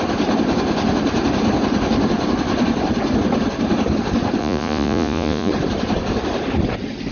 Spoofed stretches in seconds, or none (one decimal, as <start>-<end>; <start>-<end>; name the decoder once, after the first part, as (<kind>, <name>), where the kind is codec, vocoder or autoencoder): 4.4-5.5 (vocoder, Vocos)